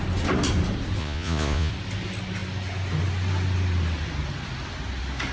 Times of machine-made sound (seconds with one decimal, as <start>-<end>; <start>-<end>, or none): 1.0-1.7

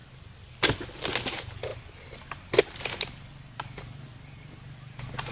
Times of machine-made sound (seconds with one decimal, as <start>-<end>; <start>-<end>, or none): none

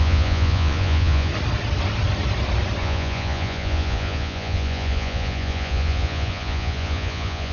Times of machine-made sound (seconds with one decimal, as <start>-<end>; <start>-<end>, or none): 0.0-1.3; 2.8-7.5

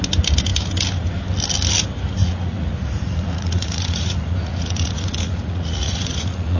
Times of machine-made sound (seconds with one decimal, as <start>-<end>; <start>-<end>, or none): 2.2-6.6

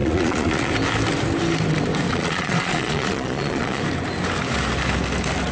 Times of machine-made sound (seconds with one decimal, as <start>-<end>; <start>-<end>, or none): 0.0-0.7; 2.1-3.8

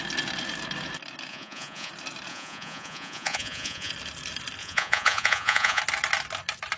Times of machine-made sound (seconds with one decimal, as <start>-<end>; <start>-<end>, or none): 1.3-1.9; 2.3-3.9; 4.6-5.8